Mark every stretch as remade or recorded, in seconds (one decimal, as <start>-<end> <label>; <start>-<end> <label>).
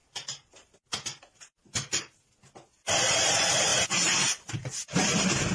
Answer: 0.0-5.5 recorded